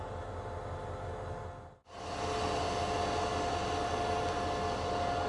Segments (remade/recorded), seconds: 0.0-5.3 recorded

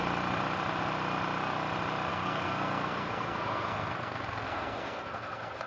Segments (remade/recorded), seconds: 0.0-2.1 recorded; 2.1-5.7 remade

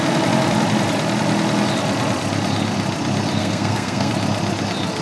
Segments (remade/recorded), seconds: 0.0-3.4 recorded; 3.4-4.1 remade; 4.1-5.0 recorded